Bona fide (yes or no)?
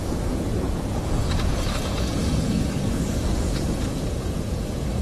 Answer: no